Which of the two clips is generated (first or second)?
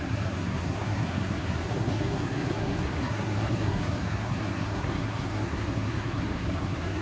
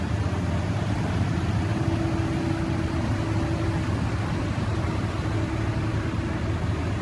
first